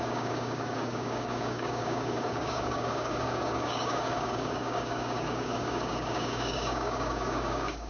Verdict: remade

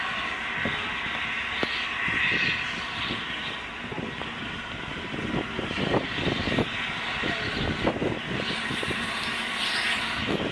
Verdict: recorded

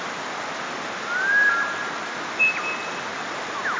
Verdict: recorded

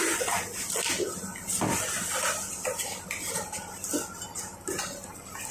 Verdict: recorded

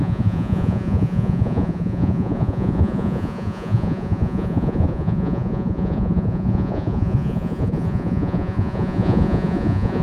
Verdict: remade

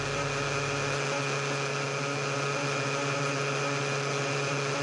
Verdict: recorded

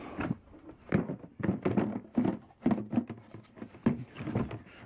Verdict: remade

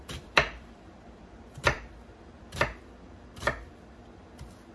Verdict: remade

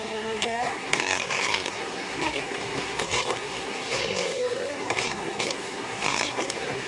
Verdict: remade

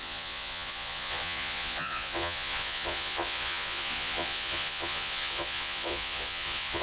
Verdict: remade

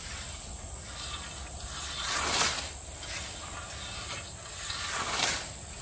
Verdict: recorded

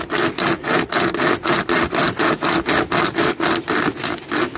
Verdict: recorded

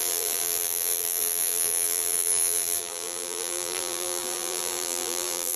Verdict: remade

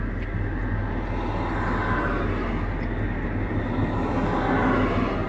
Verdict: recorded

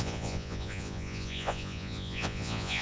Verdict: remade